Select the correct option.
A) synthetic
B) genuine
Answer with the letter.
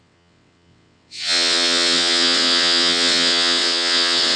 A